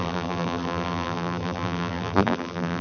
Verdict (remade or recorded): remade